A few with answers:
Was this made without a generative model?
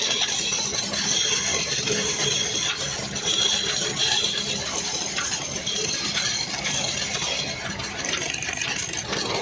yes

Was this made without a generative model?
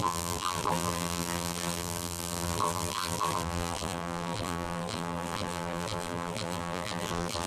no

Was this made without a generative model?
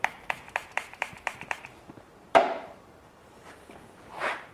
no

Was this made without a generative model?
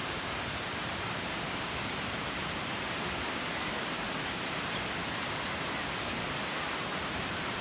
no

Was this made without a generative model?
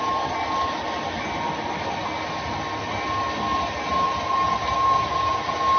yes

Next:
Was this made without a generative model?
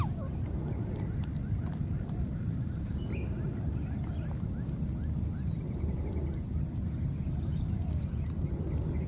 yes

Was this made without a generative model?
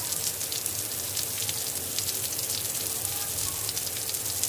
yes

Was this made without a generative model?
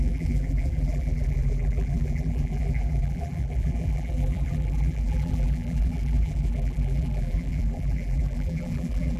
no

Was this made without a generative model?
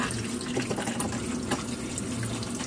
yes